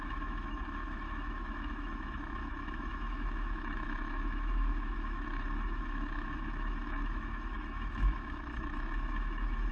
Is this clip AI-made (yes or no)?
yes